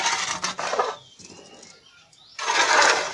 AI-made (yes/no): no